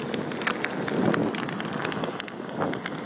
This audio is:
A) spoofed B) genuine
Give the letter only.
B